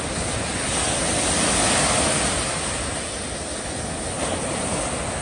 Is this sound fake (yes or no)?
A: no